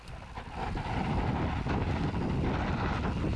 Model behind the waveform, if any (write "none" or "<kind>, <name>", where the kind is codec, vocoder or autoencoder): none